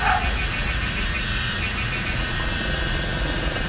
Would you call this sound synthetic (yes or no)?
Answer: yes